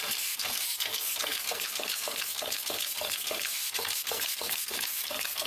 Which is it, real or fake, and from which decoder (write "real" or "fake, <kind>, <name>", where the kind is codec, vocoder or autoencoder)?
fake, codec, SNAC